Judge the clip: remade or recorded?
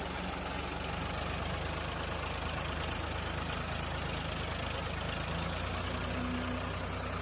recorded